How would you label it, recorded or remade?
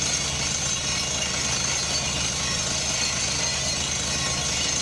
recorded